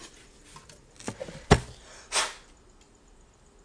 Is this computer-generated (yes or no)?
no